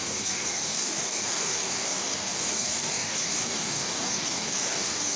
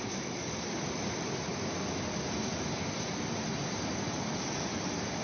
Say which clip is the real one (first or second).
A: second